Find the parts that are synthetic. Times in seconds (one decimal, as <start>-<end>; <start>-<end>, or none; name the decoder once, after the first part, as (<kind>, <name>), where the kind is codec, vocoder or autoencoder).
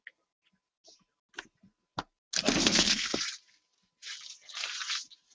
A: 2.6-3.2 (codec, SNAC)